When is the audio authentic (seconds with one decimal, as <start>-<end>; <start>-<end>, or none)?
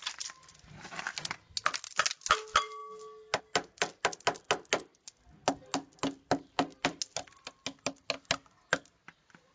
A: 0.0-9.5